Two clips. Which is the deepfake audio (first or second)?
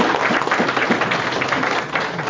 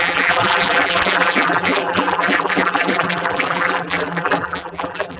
second